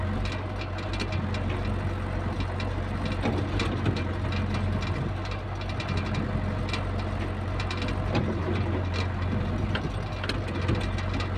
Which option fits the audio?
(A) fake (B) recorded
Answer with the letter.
B